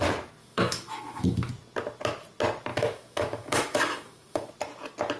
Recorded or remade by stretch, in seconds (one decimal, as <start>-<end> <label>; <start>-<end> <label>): 0.0-0.4 recorded; 0.4-1.5 remade; 1.5-2.7 recorded; 2.7-4.5 remade; 4.5-5.2 recorded